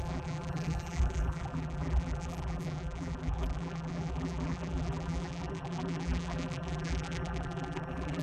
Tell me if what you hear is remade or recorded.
remade